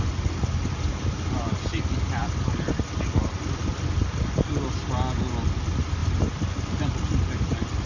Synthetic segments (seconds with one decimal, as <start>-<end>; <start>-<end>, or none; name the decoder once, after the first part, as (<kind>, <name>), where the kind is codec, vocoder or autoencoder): 0.9-1.8 (vocoder, BigVGAN v2); 6.0-7.0